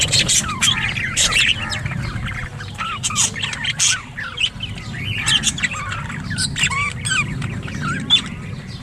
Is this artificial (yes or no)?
no